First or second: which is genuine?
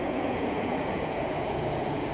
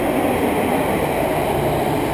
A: second